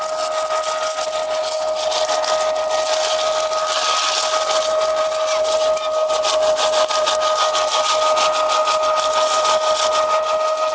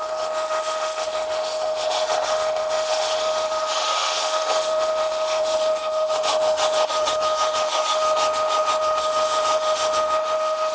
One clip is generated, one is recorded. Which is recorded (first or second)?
first